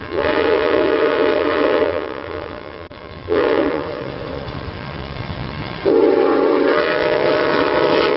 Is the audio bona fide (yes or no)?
no